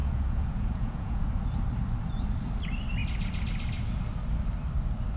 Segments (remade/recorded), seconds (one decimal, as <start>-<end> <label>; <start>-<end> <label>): 0.0-1.3 remade; 1.3-5.2 recorded